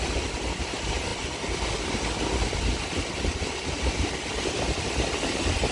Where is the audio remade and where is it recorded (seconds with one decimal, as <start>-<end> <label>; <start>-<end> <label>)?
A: 0.0-5.7 recorded